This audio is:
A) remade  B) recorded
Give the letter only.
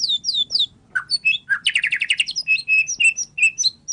B